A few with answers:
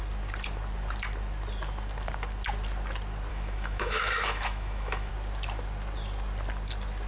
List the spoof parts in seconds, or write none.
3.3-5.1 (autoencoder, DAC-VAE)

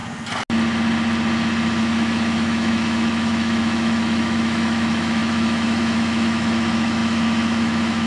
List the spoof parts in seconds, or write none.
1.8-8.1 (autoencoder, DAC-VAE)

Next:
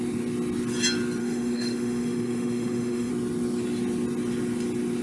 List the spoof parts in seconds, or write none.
1.2-3.1 (autoencoder, DAC-VAE)

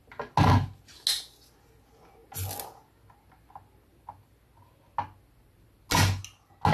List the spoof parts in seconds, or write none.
none

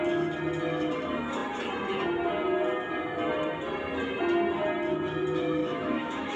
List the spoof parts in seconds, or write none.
5.6-6.4 (autoencoder, DAC-VAE)